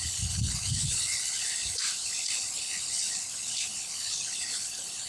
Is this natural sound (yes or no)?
no